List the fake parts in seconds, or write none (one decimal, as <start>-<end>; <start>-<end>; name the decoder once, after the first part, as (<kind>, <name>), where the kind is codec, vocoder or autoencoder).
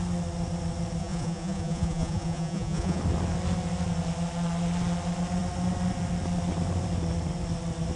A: 1.0-3.0 (vocoder, Vocos)